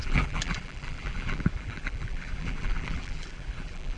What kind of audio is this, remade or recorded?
remade